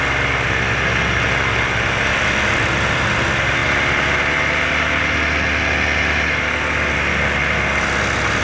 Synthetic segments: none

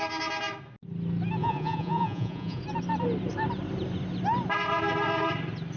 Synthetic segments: 1.4-2.6 (vocoder, Vocos)